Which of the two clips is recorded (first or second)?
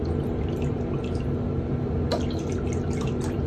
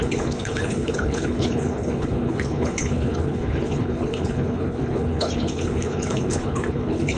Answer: first